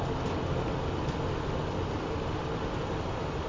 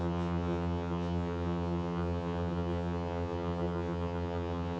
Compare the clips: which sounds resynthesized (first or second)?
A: second